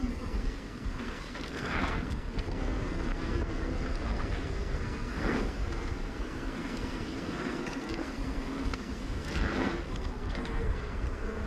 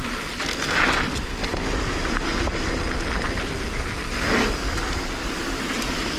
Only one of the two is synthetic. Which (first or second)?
first